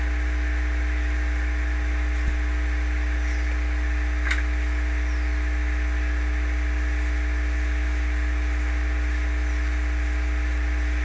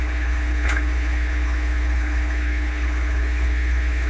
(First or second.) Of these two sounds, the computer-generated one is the second